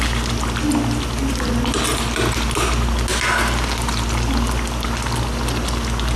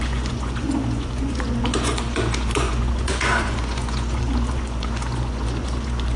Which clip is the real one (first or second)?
first